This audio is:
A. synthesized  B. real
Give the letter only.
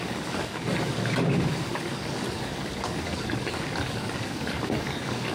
A